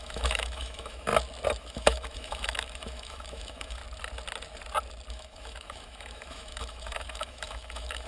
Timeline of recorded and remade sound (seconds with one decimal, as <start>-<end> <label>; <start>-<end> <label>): 0.0-1.1 remade; 1.1-1.6 recorded; 1.6-3.8 remade; 3.8-5.1 recorded; 5.1-8.1 remade